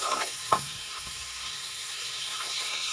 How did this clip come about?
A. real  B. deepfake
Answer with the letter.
B